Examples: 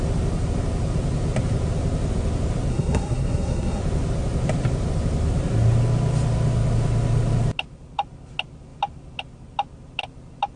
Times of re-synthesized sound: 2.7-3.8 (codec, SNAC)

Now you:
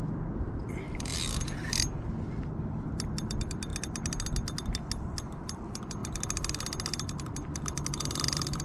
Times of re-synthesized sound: 0.0-1.1 (vocoder, BigVGAN v2); 2.3-3.7; 5.4-6.0; 6.9-8.6

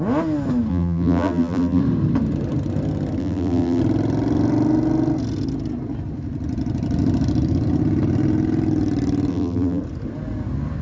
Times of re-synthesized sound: 0.7-1.8 (vocoder, BigVGAN v2); 3.2-3.8; 9.3-9.8

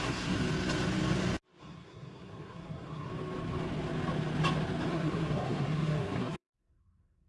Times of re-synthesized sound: 0.0-0.4 (codec, SNAC); 1.6-3.1; 4.9-7.3

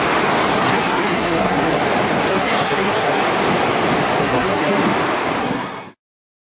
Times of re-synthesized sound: 0.5-1.8 (codec, SNAC); 2.3-3.2; 4.2-4.8; 5.4-6.0